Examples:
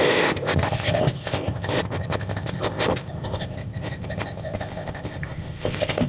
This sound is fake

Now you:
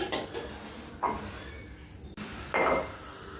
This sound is real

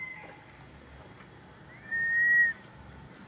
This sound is real